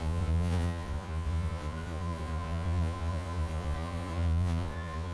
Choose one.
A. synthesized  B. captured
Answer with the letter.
A